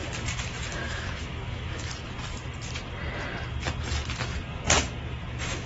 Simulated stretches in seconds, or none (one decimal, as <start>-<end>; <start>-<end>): 0.7-1.9; 5.3-5.7